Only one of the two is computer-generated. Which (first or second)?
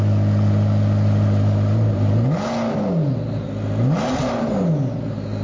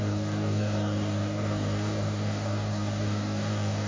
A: second